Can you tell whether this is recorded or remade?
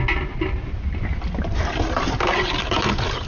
recorded